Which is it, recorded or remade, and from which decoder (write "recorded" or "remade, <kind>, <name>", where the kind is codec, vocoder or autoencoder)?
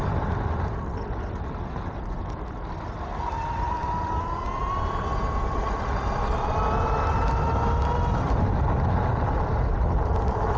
recorded